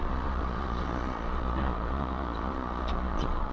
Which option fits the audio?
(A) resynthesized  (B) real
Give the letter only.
A